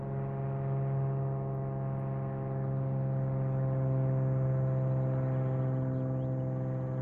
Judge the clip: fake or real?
real